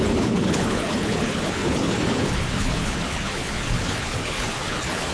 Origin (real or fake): fake